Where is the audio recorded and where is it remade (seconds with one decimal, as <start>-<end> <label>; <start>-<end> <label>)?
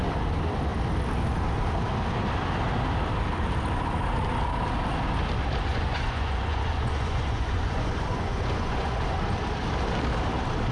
0.0-5.7 recorded; 5.7-9.1 remade; 9.1-10.7 recorded